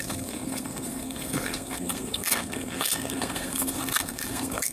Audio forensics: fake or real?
fake